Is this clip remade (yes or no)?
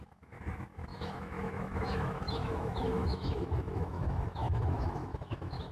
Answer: yes